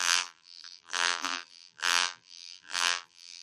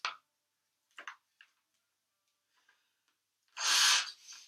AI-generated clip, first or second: first